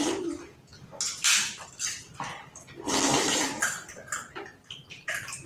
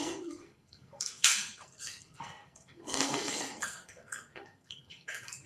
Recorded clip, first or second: first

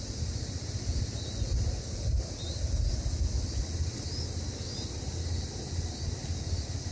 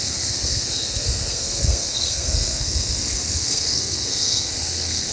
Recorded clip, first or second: first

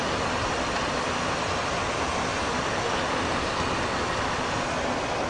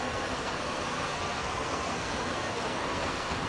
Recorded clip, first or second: first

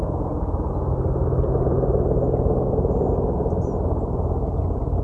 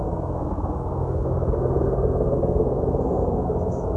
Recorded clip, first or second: first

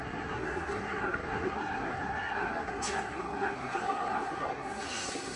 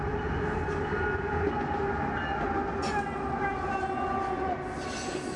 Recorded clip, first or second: second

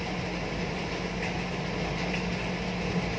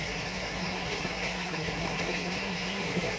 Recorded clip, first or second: first